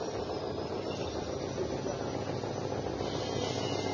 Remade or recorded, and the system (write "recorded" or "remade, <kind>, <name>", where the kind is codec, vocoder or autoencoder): recorded